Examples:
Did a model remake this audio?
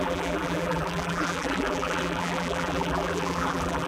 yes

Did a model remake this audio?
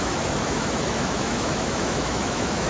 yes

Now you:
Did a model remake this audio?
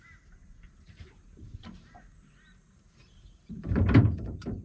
yes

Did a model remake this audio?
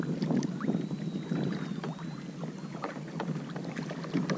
no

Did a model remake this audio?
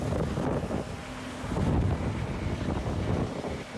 no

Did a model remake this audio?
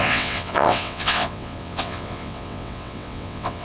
yes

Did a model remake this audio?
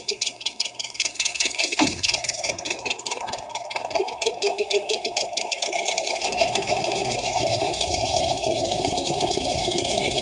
yes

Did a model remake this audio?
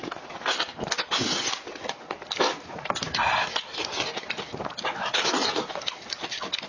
no